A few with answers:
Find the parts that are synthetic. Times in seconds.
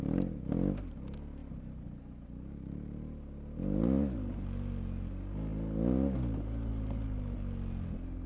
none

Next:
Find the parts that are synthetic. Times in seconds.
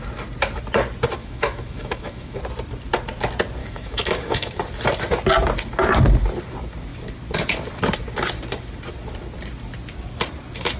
1.2-2.4 (autoencoder, DAC-VAE); 3.6-4.6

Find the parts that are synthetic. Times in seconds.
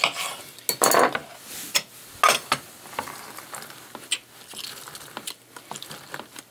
none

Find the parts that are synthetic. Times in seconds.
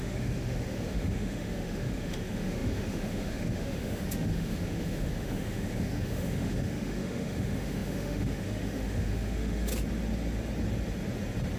0.0-9.7 (autoencoder, DAC-VAE)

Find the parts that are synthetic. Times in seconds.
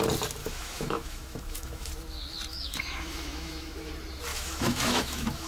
0.4-1.9 (autoencoder, DAC-VAE); 2.5-3.9; 4.3-5.5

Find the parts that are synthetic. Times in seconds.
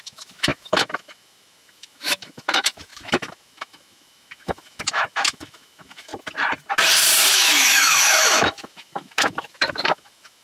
0.0-6.1 (autoencoder, DAC-VAE); 7.3-10.4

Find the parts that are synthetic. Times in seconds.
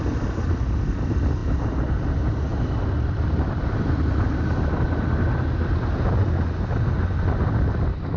none